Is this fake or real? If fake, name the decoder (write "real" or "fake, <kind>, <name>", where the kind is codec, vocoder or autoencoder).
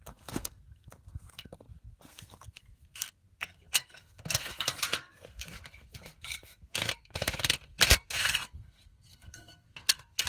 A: fake, codec, SNAC